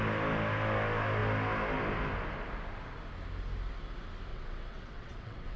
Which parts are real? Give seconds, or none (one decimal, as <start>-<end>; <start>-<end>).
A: 0.0-4.3